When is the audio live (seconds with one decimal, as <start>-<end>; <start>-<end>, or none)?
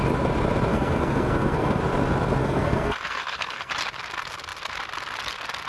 0.0-0.7; 1.8-2.4; 3.7-5.7